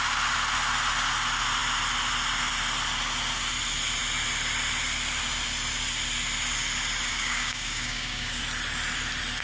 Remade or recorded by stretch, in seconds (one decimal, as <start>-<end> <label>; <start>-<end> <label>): 0.0-7.1 recorded; 7.1-8.4 remade; 8.4-9.4 recorded